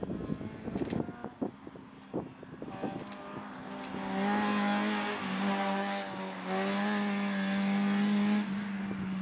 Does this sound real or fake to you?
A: real